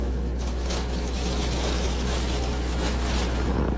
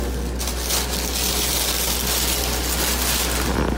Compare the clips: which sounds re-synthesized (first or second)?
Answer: first